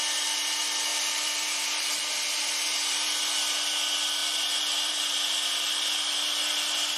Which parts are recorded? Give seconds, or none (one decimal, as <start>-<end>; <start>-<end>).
0.0-0.9; 2.1-4.2; 4.9-7.0